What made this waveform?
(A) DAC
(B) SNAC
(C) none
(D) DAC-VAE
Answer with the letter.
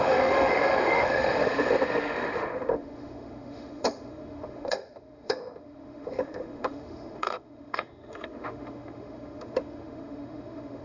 D